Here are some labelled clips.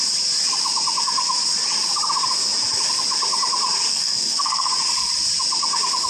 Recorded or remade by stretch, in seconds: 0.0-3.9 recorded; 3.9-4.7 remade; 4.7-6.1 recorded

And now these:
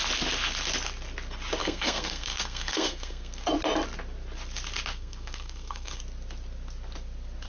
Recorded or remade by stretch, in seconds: 0.0-1.6 recorded; 1.6-3.5 remade; 3.5-4.9 recorded; 4.9-6.0 remade; 6.0-7.5 recorded

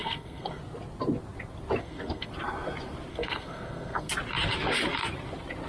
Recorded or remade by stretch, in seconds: 0.0-0.6 remade; 0.6-1.8 recorded; 1.8-2.3 remade; 2.3-3.1 recorded; 3.1-4.1 remade; 4.1-5.7 recorded

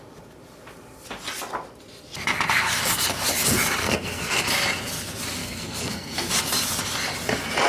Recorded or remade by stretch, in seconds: 0.0-3.8 recorded; 3.8-4.4 remade; 4.4-5.4 recorded; 5.4-6.3 remade; 6.3-7.7 recorded

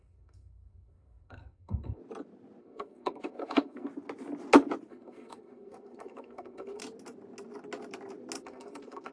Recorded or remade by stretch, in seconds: 0.0-2.0 remade; 2.0-2.6 recorded; 2.6-3.9 remade; 3.9-4.9 recorded; 4.9-6.8 remade; 6.8-8.4 recorded; 8.4-9.1 remade

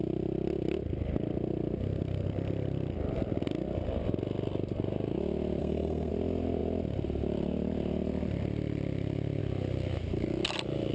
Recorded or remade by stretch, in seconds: 0.0-5.6 recorded; 5.6-6.1 remade; 6.1-10.9 recorded